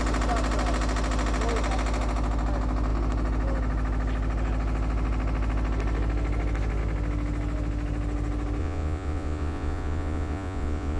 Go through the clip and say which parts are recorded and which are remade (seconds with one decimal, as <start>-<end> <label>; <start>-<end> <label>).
0.0-8.6 recorded; 8.6-11.0 remade